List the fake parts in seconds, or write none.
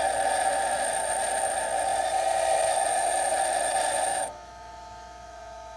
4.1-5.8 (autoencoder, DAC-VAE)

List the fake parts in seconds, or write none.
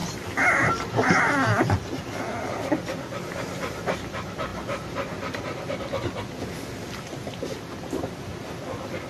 none